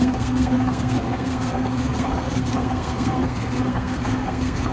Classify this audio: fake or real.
fake